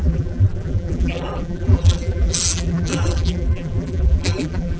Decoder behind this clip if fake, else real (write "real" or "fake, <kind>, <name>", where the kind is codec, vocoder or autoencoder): fake, vocoder, BigVGAN v2